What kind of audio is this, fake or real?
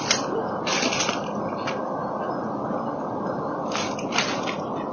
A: real